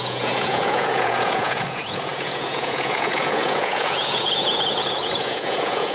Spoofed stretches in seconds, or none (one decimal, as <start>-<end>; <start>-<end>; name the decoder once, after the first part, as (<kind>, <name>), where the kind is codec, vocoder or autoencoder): 0.0-5.9 (vocoder, Vocos)